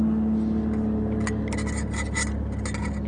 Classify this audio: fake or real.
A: real